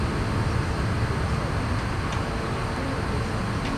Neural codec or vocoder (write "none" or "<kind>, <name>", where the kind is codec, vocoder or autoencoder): none